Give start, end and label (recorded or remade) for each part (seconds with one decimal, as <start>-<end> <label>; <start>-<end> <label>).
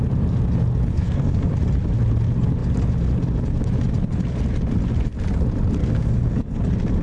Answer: 0.0-0.9 recorded; 0.9-1.5 remade; 1.5-5.8 recorded; 5.8-6.6 remade; 6.6-7.0 recorded